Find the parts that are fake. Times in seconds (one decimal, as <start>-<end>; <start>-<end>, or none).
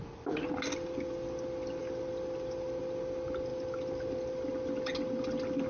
none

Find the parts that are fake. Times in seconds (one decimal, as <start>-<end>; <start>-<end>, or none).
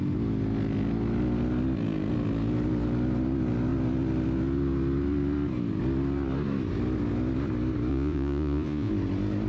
7.9-8.9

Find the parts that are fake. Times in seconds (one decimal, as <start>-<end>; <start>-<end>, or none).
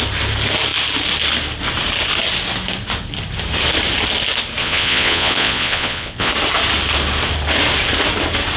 4.6-6.3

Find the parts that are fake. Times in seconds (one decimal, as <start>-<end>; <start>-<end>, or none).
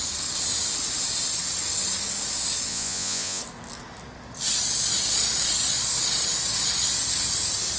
2.7-3.4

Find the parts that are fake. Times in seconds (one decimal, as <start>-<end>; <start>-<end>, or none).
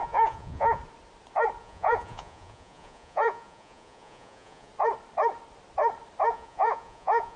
0.0-0.8; 1.6-4.7; 6.3-7.4